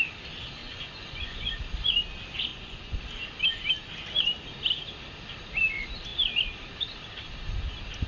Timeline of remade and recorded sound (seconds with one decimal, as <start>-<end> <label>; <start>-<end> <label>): 0.0-0.6 recorded; 0.6-1.4 remade; 1.4-2.5 recorded; 2.5-3.0 remade; 3.0-8.1 recorded